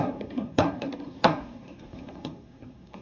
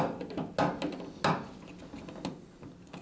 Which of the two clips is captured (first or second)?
second